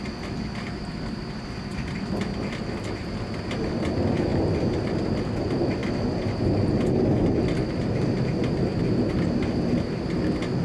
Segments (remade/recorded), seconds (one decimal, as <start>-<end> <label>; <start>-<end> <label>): 0.0-10.6 recorded